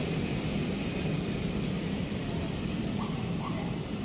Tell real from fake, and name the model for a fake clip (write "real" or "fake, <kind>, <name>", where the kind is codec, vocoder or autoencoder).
fake, vocoder, BigVGAN v2